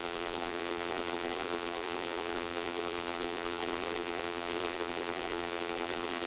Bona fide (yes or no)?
no